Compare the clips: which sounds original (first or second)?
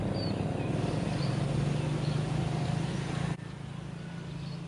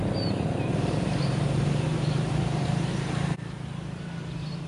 first